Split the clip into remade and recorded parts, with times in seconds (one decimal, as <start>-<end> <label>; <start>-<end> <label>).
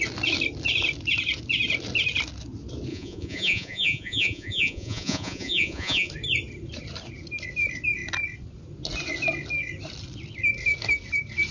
0.0-2.9 recorded; 2.9-6.1 remade; 6.1-11.5 recorded